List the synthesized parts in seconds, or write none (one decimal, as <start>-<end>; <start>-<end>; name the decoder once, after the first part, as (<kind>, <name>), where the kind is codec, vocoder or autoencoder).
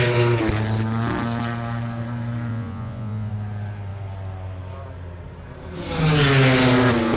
2.5-3.3 (vocoder, Vocos)